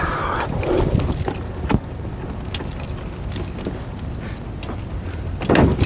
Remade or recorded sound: recorded